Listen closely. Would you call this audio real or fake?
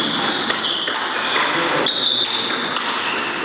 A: real